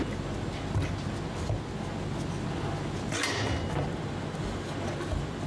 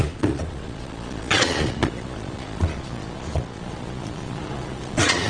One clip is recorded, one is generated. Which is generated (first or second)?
second